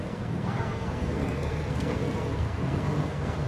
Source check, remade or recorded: remade